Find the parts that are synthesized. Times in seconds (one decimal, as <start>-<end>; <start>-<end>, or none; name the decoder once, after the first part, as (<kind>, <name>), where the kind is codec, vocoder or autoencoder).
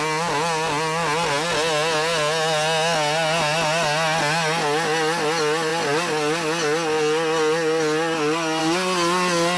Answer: none